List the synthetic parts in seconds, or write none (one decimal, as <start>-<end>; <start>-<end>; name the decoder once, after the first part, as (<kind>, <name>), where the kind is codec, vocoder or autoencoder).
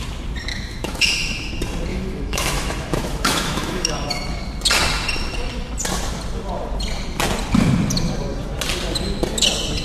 0.5-1.5 (autoencoder, DAC-VAE); 1.9-3.9